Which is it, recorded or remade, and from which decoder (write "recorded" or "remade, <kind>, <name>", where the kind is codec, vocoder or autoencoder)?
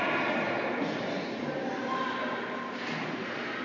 recorded